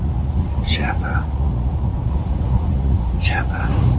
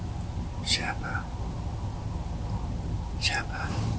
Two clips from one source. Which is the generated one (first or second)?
first